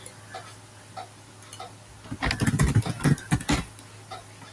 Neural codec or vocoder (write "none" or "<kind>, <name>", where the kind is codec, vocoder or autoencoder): none